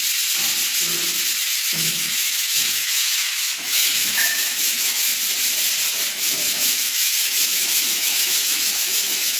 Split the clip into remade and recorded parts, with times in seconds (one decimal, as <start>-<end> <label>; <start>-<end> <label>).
0.0-1.4 recorded; 1.4-5.1 remade; 5.1-6.1 recorded; 6.1-9.4 remade